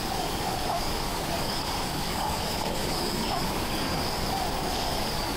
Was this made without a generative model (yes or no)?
no